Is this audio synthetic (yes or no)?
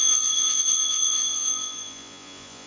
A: yes